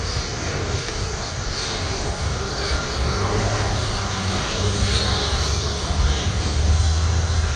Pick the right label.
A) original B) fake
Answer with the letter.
B